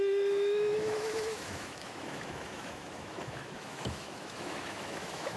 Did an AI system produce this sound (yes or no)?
yes